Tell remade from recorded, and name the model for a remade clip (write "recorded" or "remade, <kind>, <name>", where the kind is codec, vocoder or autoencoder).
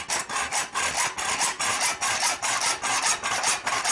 recorded